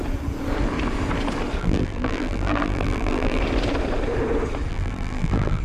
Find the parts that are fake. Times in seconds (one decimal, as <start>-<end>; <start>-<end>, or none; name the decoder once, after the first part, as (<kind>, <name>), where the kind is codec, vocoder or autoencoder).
1.6-3.4 (vocoder, BigVGAN v2); 4.7-5.6